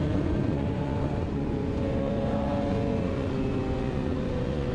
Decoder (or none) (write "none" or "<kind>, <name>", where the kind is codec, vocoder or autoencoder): vocoder, Vocos